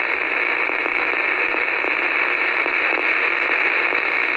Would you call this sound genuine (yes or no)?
yes